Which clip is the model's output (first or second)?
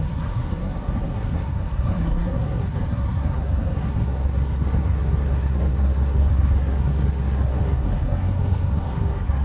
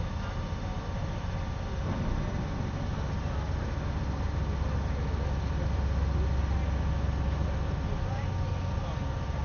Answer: first